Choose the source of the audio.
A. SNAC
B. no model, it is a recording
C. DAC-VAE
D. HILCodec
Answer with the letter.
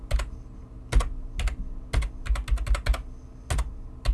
B